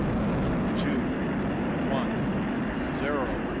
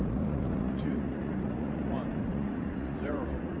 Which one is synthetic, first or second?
second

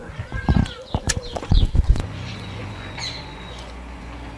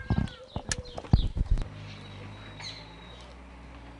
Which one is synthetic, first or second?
first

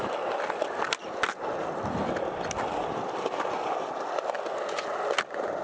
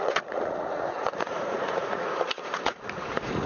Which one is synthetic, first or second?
second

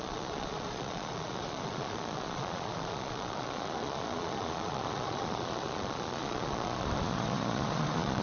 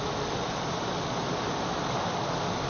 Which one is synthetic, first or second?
first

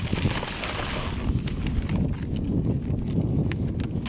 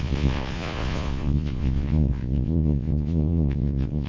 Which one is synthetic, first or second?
second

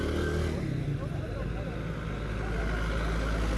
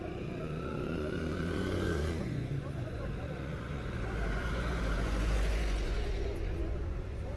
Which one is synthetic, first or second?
second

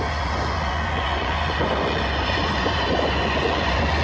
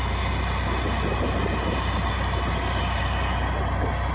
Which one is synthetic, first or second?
first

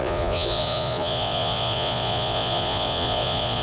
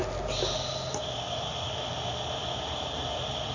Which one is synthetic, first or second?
first